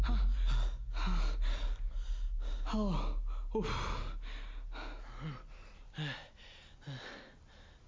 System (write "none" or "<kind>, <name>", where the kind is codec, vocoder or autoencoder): none